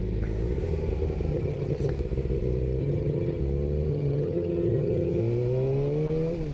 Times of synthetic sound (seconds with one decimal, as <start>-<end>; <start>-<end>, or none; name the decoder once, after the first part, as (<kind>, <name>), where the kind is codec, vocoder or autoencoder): 1.3-1.9 (vocoder, HiFi-GAN); 2.8-3.4; 3.9-5.2